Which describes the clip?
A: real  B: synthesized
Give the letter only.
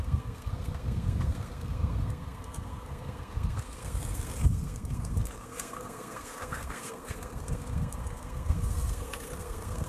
B